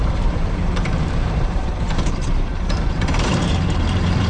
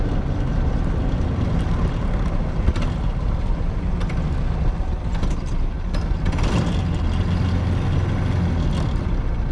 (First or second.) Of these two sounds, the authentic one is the second